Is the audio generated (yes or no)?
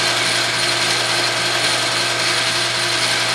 no